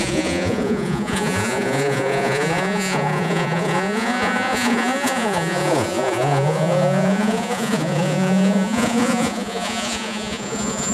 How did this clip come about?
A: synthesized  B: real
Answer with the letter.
A